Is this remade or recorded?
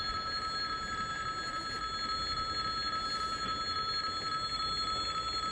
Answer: recorded